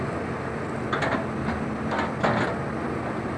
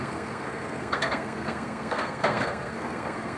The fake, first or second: second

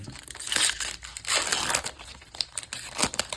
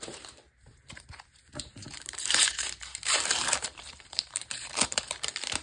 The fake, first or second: second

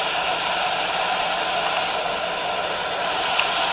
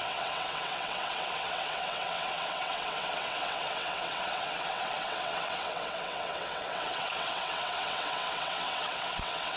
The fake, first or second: second